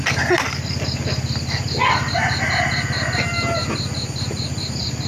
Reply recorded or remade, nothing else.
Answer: recorded